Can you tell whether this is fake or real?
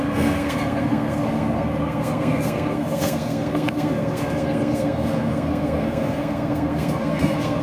fake